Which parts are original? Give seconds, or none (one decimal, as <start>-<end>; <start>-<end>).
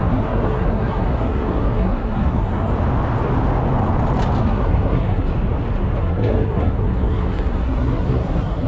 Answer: 2.7-4.4; 5.3-6.0